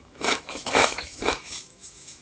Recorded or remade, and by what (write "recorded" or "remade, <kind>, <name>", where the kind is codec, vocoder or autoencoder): remade, autoencoder, DAC-VAE